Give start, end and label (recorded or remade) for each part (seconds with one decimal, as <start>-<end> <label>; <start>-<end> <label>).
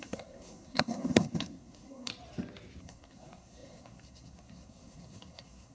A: 0.0-2.1 remade; 2.1-2.8 recorded; 2.8-5.7 remade